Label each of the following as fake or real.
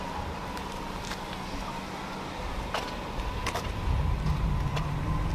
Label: real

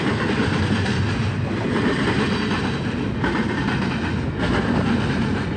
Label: real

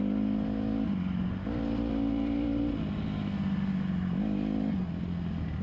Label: real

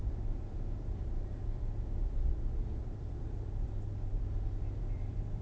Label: fake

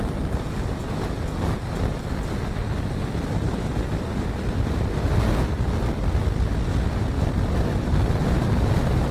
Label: real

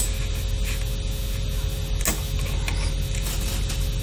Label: real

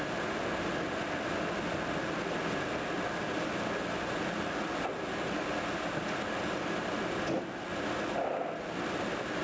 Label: real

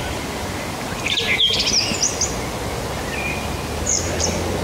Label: real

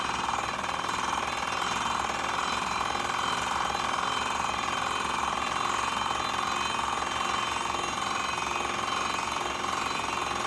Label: real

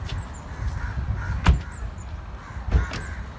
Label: real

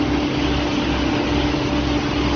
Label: real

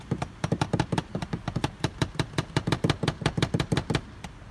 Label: fake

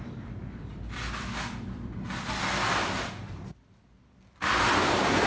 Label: fake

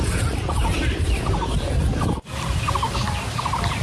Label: real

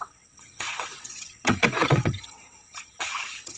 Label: fake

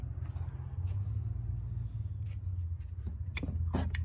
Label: real